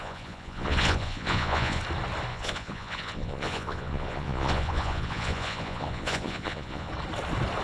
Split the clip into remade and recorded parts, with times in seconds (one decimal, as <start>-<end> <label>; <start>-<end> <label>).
0.0-1.8 remade; 1.8-2.3 recorded; 2.3-6.9 remade; 6.9-7.6 recorded